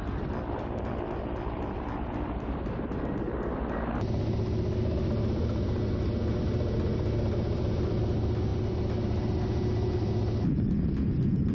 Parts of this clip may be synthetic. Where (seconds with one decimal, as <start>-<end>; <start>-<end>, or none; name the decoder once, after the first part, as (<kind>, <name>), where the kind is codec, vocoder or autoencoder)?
none